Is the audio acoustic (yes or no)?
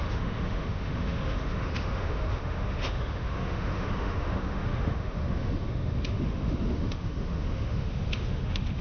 no